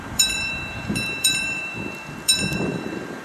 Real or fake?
fake